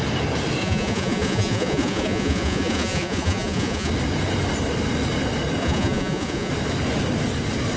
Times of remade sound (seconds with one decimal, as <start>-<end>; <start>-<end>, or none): 0.6-3.9; 5.6-6.5

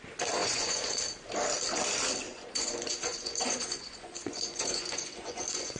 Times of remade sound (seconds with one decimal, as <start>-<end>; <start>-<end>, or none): 0.4-1.0; 2.3-5.8

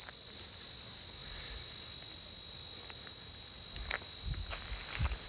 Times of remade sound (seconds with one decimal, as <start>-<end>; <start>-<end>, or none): none

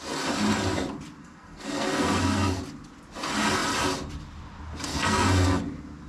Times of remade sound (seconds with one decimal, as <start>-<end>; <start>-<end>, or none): 1.2-2.6; 4.9-5.6

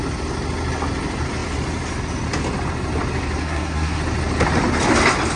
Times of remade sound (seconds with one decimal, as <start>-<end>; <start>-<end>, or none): 3.4-4.0